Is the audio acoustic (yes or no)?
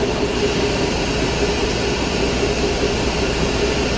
no